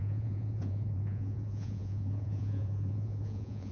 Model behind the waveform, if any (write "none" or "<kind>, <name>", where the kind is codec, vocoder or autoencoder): vocoder, Vocos